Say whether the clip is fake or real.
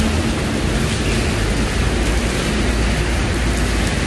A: real